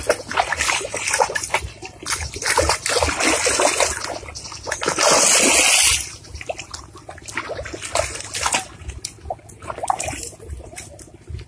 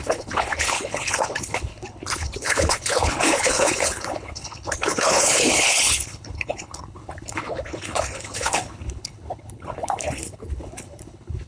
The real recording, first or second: first